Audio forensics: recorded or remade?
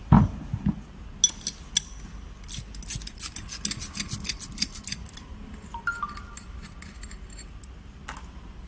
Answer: recorded